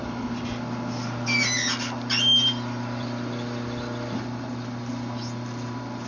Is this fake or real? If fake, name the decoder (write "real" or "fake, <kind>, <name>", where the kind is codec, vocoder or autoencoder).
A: real